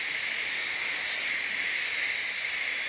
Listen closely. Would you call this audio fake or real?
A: real